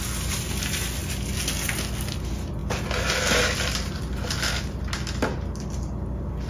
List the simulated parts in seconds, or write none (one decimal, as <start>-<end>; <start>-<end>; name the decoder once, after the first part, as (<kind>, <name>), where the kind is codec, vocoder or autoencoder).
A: none